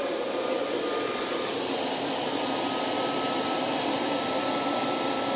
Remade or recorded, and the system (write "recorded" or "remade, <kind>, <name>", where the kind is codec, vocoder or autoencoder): recorded